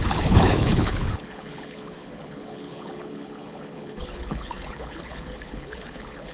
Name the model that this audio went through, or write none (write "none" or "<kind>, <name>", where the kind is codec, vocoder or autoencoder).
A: codec, HILCodec